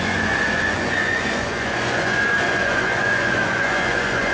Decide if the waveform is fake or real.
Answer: fake